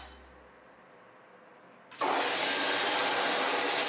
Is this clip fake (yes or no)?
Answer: no